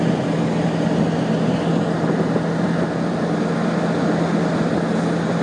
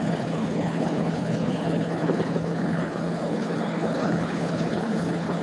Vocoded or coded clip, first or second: second